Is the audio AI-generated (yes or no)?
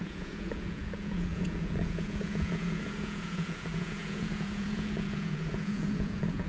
yes